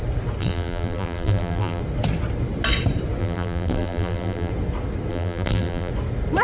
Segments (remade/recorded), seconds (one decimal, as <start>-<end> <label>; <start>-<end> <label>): 0.0-0.4 recorded; 0.4-1.8 remade; 1.8-3.2 recorded; 3.2-4.5 remade; 4.5-5.1 recorded; 5.1-5.9 remade; 5.9-6.4 recorded